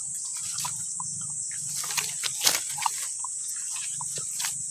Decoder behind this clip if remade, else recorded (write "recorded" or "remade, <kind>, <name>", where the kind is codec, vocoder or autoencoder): recorded